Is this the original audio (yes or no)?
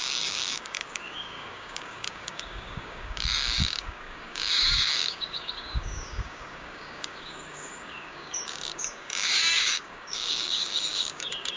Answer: no